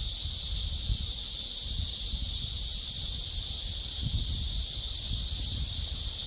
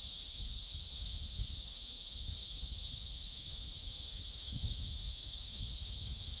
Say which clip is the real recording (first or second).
first